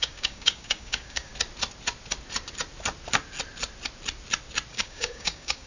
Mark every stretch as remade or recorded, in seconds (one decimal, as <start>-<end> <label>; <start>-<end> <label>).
0.0-1.3 remade; 1.3-4.7 recorded; 4.7-5.7 remade